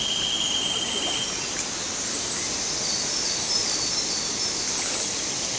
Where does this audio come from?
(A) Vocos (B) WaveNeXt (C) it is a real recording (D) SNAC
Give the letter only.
C